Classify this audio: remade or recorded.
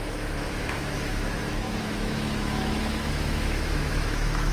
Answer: remade